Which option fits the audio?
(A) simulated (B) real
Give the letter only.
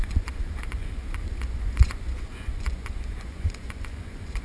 A